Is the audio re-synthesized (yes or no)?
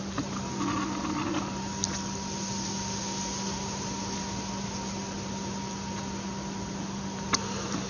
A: no